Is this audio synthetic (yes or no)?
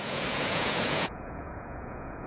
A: yes